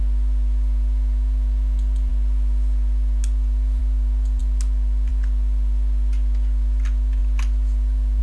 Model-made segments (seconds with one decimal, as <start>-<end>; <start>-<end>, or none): none